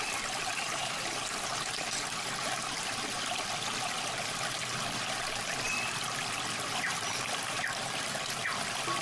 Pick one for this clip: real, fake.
real